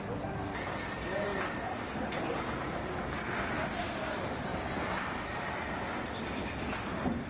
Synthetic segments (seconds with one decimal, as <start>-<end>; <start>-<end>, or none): none